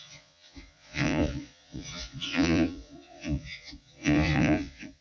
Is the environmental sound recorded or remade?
remade